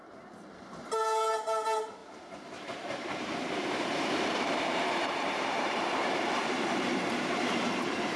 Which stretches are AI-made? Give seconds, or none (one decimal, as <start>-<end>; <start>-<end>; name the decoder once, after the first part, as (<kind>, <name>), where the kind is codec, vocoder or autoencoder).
1.3-2.0 (vocoder, BigVGAN v2); 2.6-8.2